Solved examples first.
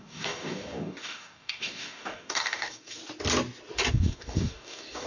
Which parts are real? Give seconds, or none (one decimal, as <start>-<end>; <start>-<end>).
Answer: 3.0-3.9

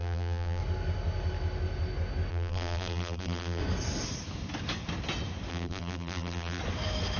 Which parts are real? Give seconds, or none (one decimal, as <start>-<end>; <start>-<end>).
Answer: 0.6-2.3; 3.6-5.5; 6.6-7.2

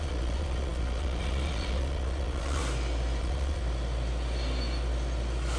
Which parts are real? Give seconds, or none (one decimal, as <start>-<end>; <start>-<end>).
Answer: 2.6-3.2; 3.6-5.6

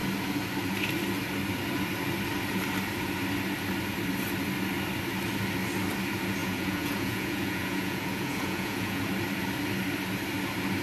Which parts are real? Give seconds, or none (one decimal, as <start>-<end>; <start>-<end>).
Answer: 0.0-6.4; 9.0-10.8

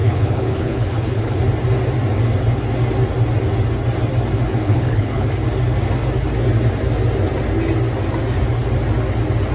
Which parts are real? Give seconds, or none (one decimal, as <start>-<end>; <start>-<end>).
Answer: 1.4-4.6; 5.3-9.5